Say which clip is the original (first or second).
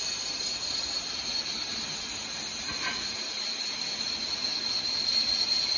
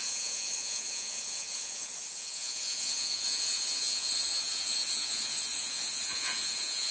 first